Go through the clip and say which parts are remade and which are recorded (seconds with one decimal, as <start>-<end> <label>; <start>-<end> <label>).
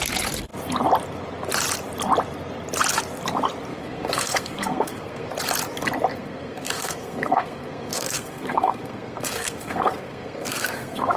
0.0-3.7 recorded; 3.7-5.3 remade; 5.3-6.1 recorded; 6.1-11.2 remade